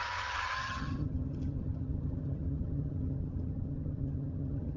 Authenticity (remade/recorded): remade